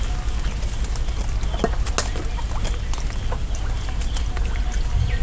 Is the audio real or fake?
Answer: real